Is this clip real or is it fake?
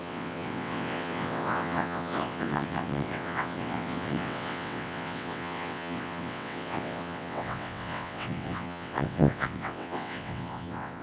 fake